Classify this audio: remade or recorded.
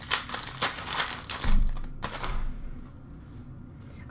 recorded